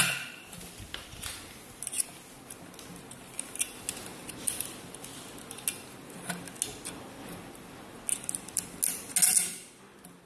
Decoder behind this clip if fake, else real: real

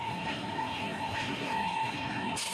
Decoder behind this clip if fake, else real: fake, codec, SNAC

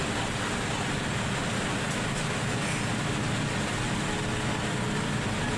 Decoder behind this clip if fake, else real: real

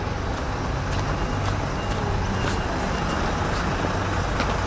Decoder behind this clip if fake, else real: real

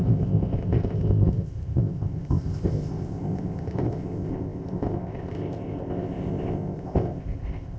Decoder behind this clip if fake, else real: fake, codec, ZipCodec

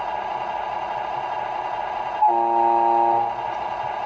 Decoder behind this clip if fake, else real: real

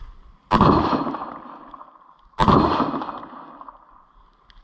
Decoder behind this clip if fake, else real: real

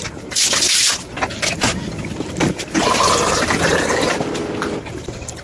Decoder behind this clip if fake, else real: real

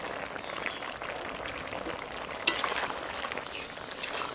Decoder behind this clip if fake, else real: real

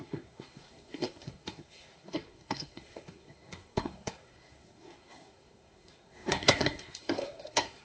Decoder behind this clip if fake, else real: fake, codec, SNAC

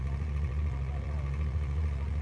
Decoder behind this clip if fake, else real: fake, vocoder, Vocos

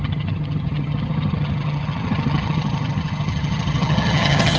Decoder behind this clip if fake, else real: fake, vocoder, HiFi-GAN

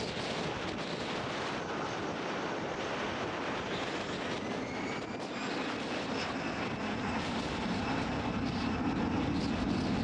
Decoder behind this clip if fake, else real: real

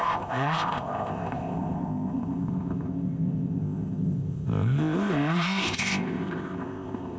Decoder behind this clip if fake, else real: fake, codec, ZipCodec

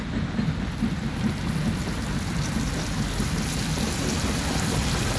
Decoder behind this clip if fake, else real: real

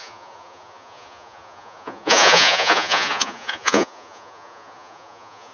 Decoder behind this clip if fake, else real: fake, vocoder, Vocos